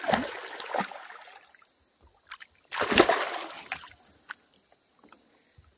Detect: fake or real real